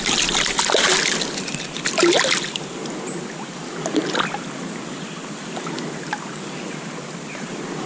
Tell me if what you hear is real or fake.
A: real